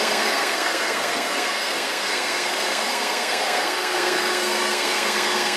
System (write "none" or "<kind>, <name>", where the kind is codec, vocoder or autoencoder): codec, SNAC